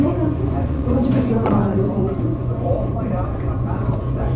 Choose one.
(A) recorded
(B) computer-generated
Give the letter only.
B